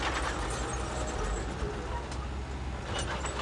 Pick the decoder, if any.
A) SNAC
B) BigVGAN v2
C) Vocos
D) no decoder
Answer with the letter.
D